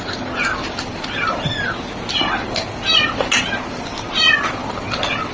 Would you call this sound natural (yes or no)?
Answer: yes